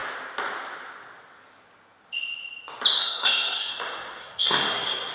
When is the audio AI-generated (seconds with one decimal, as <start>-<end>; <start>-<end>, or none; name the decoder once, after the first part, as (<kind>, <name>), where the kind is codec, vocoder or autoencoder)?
3.0-3.7 (codec, SNAC); 4.2-5.1